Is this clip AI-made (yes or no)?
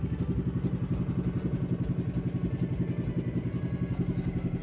no